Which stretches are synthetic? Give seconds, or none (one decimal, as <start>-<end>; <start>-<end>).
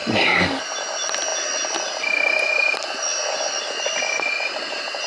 0.0-0.6